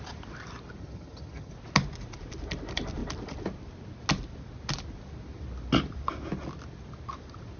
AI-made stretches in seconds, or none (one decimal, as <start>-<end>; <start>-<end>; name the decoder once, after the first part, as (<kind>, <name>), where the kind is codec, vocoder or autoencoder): 0.8-1.5 (vocoder, HiFi-GAN)

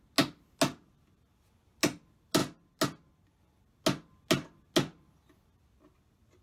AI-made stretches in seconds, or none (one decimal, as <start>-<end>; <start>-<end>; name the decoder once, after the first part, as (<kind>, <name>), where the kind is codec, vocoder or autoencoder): none

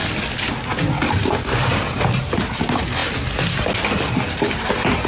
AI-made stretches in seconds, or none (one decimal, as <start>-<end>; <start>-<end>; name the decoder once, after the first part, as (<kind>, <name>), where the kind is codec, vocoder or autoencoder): none

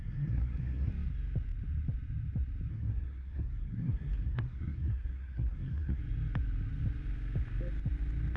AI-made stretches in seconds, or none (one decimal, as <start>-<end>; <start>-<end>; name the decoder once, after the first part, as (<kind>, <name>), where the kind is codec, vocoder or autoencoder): 0.0-0.9 (codec, SNAC); 2.7-6.0